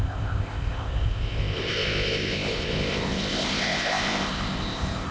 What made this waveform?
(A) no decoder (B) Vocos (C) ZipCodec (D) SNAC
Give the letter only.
C